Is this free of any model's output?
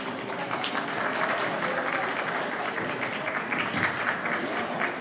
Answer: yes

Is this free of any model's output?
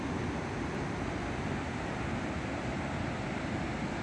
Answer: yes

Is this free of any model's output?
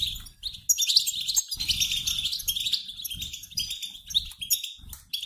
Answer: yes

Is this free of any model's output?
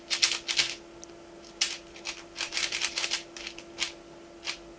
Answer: yes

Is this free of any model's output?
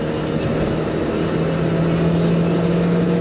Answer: yes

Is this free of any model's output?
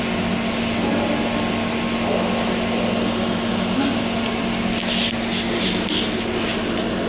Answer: yes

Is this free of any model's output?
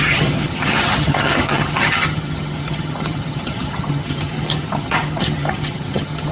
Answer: no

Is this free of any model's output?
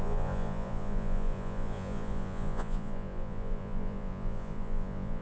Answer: no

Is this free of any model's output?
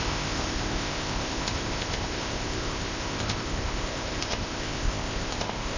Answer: no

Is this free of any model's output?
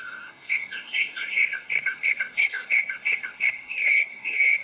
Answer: no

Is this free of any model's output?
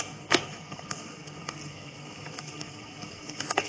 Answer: no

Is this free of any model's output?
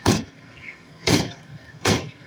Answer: no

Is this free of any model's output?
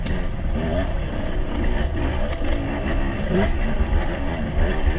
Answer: yes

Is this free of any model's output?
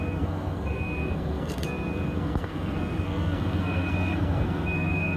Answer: no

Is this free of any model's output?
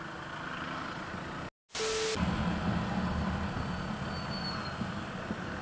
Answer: yes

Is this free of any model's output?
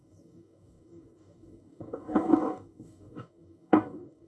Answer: no